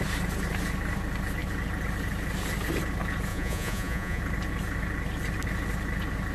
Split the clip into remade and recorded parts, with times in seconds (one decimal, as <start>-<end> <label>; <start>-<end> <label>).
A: 0.0-3.3 recorded; 3.3-4.2 remade; 4.2-6.3 recorded